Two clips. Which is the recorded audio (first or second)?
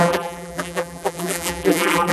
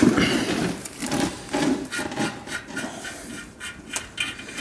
second